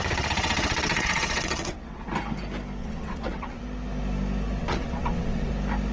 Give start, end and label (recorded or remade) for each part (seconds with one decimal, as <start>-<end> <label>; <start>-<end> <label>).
0.0-2.1 remade; 2.1-2.8 recorded; 2.8-3.6 remade; 3.6-4.6 recorded; 4.6-5.5 remade; 5.5-5.9 recorded